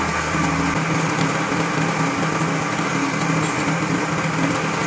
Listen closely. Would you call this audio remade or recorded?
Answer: recorded